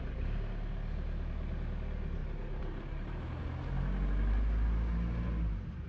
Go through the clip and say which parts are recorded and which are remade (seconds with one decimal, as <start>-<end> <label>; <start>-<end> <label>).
0.0-5.9 recorded